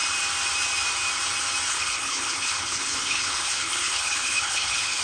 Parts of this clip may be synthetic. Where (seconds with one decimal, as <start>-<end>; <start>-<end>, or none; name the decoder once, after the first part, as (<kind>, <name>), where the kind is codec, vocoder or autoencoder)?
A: 1.7-5.0 (codec, HILCodec)